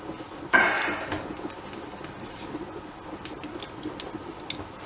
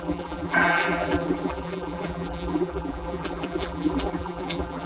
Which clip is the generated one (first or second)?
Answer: second